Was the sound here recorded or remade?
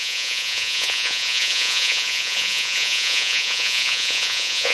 remade